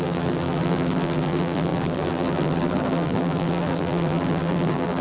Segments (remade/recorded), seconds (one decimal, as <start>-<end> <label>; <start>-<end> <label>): 0.0-5.0 remade